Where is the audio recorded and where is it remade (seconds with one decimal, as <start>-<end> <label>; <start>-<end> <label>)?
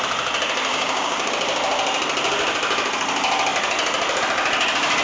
0.0-0.7 recorded; 0.7-1.3 remade; 1.3-5.0 recorded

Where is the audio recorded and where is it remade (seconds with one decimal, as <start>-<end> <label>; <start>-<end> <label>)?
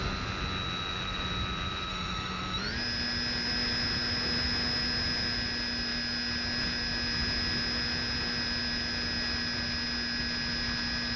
0.0-1.9 recorded; 1.9-2.6 remade; 2.6-11.2 recorded